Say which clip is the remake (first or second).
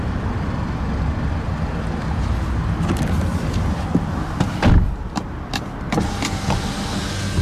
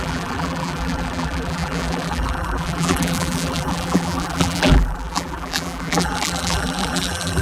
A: second